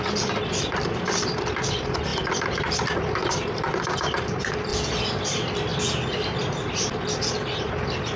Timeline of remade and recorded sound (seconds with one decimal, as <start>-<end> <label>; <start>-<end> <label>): 0.0-4.7 remade; 4.7-5.2 recorded; 5.2-5.7 remade; 5.7-7.6 recorded; 7.6-8.2 remade